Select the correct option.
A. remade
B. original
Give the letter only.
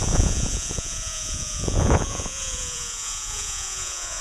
A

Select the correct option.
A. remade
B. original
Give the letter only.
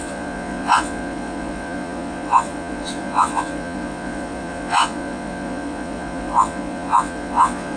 A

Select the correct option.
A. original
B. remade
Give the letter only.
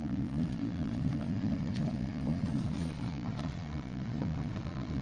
B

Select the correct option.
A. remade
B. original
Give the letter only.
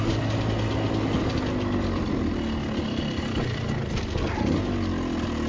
B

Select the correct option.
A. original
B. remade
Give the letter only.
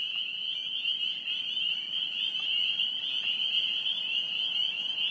A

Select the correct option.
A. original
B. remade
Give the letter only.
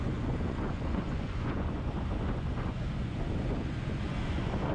B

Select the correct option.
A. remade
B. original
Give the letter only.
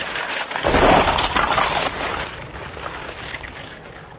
B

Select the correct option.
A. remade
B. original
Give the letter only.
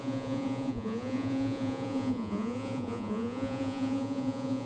A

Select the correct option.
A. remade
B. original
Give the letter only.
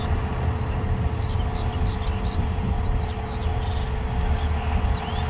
B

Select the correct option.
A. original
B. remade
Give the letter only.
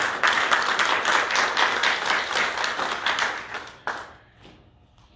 A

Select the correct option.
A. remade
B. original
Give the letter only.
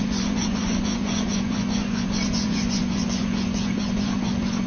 A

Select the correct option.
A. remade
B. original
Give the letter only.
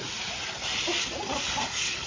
B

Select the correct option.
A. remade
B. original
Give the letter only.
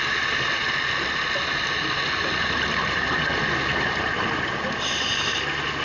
B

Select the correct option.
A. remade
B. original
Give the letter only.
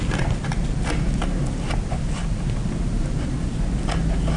B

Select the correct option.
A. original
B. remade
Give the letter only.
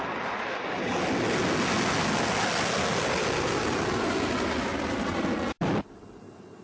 A